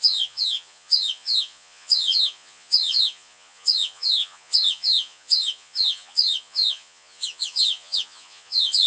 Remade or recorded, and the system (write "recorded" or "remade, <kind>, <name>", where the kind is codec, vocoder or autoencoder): remade, vocoder, Vocos